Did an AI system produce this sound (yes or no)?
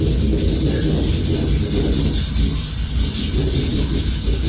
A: no